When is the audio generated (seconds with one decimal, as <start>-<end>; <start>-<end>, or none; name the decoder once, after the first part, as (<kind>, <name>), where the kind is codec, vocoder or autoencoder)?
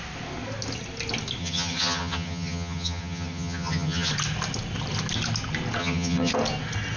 1.4-4.1 (vocoder, HiFi-GAN); 5.8-6.3